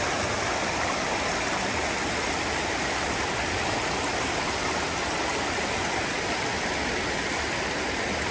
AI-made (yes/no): no